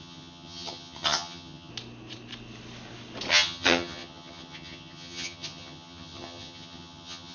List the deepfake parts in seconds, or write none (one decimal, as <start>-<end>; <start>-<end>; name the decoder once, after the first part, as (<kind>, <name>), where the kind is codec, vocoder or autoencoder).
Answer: 0.0-1.7 (vocoder, HiFi-GAN); 3.3-7.3